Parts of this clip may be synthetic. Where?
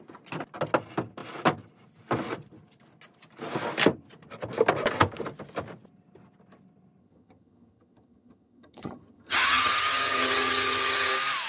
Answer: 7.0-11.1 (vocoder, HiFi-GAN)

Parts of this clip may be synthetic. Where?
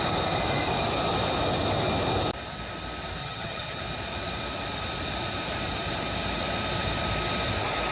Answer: 3.2-3.8 (vocoder, HiFi-GAN)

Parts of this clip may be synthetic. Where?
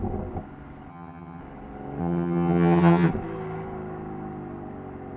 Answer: 0.9-1.4 (vocoder, HiFi-GAN); 2.0-3.1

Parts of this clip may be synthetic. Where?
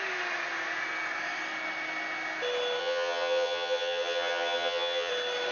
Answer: 2.8-5.1 (vocoder, HiFi-GAN)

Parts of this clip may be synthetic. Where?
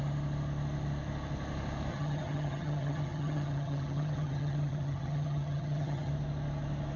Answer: 1.9-6.1 (vocoder, HiFi-GAN)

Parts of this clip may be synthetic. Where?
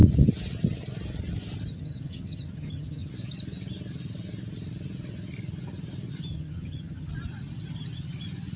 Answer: 1.7-3.1 (vocoder, HiFi-GAN); 6.3-7.1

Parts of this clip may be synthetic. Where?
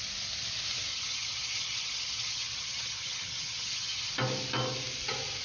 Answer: 0.9-4.1 (vocoder, HiFi-GAN)